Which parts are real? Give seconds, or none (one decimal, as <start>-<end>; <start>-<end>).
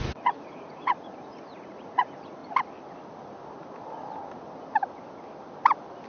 2.4-6.1